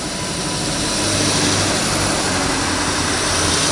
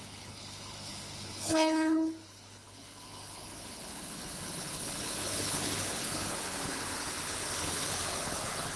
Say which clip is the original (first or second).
first